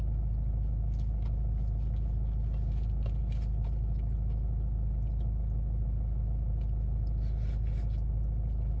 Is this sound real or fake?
real